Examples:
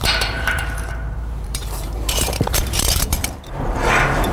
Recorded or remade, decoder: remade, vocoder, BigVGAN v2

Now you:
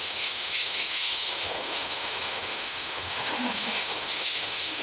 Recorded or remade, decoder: remade, autoencoder, DAC-VAE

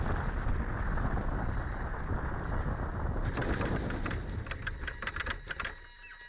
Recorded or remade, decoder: recorded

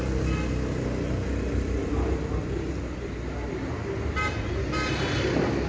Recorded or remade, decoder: recorded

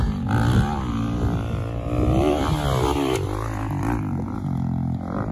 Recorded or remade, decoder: recorded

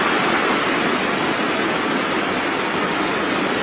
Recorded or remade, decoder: recorded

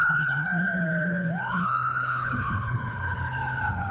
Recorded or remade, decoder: remade, codec, HILCodec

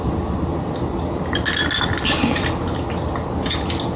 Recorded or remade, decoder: recorded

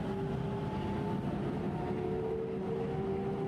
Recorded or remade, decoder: recorded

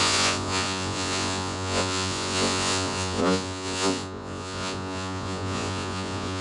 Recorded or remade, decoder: remade, vocoder, Vocos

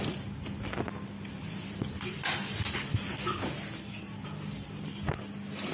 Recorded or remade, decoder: recorded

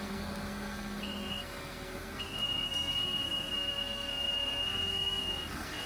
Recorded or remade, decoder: remade, codec, SNAC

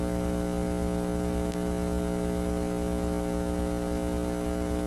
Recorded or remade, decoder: recorded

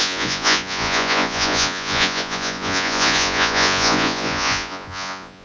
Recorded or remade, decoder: remade, vocoder, Vocos